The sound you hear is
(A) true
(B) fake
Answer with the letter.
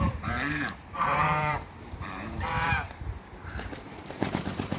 B